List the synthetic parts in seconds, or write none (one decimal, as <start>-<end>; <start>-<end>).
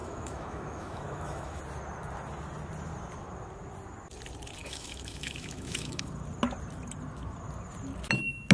0.0-1.6; 4.6-6.1